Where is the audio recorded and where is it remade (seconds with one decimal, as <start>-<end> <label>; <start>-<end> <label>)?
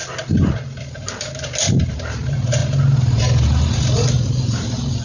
0.0-2.0 recorded; 2.0-2.6 remade; 2.6-4.1 recorded; 4.1-5.0 remade